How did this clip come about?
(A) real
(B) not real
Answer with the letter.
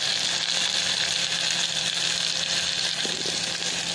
B